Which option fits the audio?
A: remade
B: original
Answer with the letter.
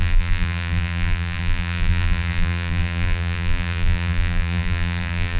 A